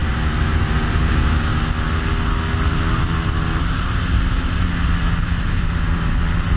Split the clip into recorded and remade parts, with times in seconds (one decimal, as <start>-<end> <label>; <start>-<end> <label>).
0.0-1.5 remade; 1.5-5.5 recorded; 5.5-6.6 remade